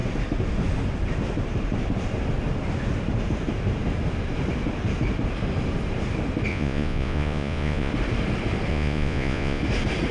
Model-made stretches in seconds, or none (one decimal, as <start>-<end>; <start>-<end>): 6.5-7.9; 8.7-9.6